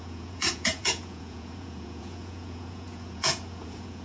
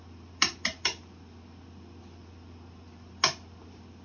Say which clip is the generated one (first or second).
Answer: first